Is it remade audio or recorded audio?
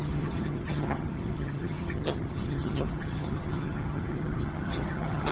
remade